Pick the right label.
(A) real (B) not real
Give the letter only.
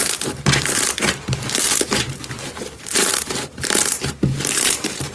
B